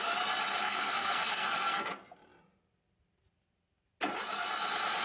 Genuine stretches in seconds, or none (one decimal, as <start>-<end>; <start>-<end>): 0.0-0.6; 1.9-5.0